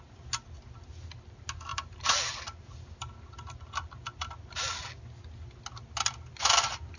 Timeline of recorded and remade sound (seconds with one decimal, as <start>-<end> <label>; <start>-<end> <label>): 0.0-7.0 recorded